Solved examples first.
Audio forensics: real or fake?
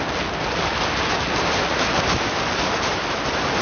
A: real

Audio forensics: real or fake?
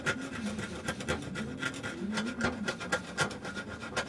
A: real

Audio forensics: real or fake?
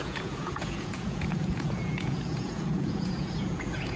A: fake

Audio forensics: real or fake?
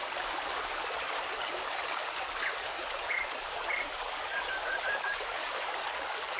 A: fake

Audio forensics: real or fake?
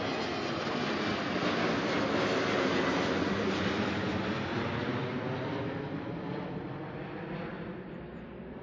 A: real